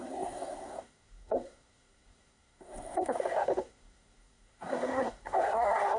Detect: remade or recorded remade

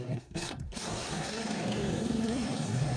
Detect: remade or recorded remade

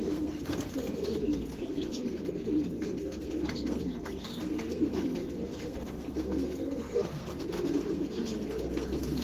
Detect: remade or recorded remade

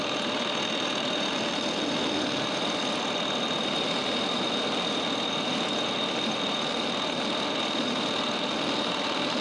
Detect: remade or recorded recorded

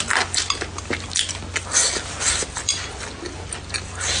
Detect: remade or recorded recorded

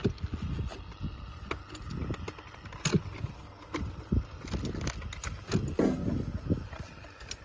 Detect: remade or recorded recorded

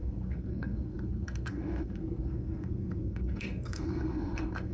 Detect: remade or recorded remade